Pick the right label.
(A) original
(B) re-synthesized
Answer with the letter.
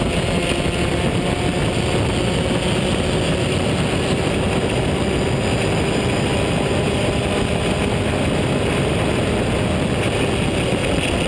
A